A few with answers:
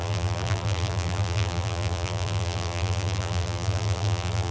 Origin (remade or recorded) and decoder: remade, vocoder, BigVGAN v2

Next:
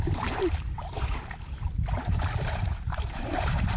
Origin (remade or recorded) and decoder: remade, vocoder, BigVGAN v2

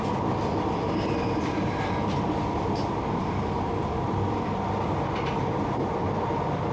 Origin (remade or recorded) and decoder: recorded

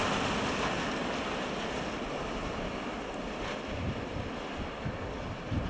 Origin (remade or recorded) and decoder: recorded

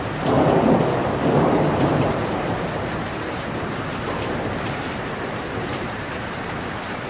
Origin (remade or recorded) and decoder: remade, vocoder, BigVGAN v2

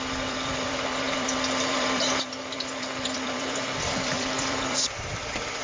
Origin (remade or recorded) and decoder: remade, vocoder, BigVGAN v2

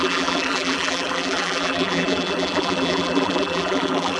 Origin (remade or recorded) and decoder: remade, vocoder, BigVGAN v2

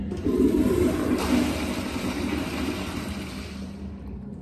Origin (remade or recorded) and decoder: recorded